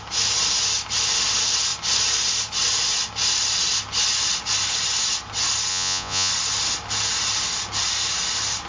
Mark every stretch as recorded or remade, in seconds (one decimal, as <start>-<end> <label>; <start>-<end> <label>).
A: 0.0-5.7 recorded; 5.7-6.3 remade; 6.3-8.7 recorded